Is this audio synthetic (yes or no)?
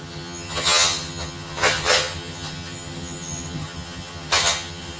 yes